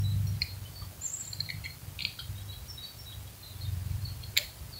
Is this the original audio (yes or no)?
yes